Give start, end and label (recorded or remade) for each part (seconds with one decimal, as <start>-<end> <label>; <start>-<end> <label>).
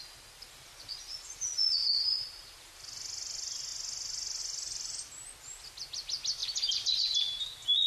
0.0-6.4 recorded; 6.4-7.0 remade; 7.0-7.9 recorded